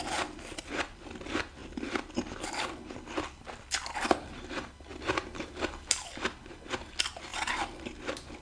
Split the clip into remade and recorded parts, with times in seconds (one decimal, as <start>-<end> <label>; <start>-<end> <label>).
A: 0.0-8.4 recorded